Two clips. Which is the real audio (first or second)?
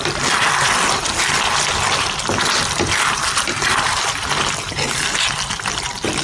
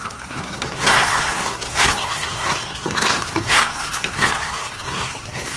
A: first